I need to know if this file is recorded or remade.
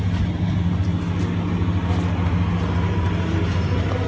recorded